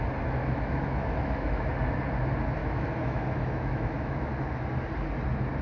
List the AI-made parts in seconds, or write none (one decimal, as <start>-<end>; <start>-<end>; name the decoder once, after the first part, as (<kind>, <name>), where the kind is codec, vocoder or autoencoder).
0.4-1.7 (autoencoder, DAC-VAE); 2.6-4.3

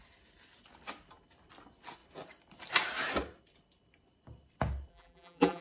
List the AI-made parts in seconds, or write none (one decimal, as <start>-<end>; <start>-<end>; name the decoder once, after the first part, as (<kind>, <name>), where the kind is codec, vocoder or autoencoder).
4.9-5.6 (vocoder, BigVGAN v2)

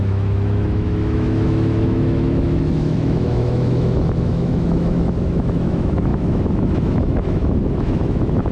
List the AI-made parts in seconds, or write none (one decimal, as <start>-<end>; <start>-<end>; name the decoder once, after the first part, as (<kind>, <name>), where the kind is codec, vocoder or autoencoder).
0.0-8.5 (autoencoder, DAC-VAE)

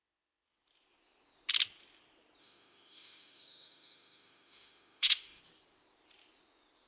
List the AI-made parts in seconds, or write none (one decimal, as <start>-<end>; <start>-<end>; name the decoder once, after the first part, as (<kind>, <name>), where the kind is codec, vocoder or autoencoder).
2.4-5.4 (autoencoder, DAC-VAE)

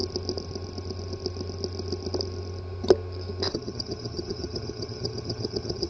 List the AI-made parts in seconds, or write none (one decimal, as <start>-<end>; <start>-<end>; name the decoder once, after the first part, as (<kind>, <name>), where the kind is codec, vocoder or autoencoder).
3.5-5.9 (vocoder, HiFi-GAN)

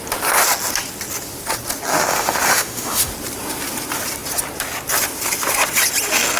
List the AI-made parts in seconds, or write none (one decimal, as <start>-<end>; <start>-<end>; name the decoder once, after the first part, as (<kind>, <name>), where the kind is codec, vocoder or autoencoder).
2.0-3.1 (autoencoder, DAC-VAE)

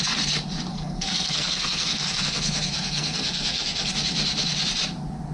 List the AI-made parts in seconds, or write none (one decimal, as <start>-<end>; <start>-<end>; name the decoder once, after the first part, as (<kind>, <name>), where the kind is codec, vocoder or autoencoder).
0.7-3.9 (codec, SNAC)

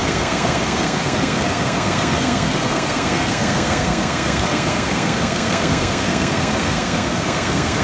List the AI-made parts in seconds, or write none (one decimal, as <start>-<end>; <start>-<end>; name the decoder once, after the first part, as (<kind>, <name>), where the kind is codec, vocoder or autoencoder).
0.0-7.8 (codec, SNAC)